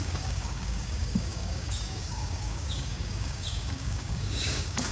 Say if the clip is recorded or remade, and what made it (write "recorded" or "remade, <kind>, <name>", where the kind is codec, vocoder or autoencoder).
remade, codec, DAC